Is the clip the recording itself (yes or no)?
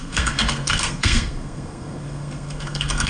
no